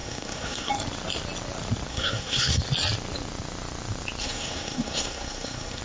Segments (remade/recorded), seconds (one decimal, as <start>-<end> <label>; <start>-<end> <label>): 0.0-0.7 remade; 0.7-1.9 recorded; 1.9-2.6 remade; 2.6-4.2 recorded; 4.2-5.8 remade